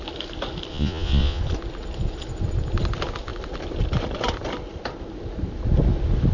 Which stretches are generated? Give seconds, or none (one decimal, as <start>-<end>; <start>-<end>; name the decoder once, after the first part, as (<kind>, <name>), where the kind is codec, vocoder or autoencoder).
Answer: 0.7-1.4 (vocoder, Vocos)